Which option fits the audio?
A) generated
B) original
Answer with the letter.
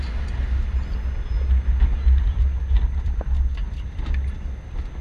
B